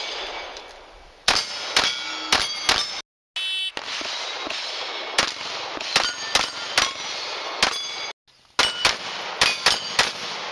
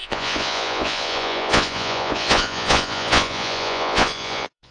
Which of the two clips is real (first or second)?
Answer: first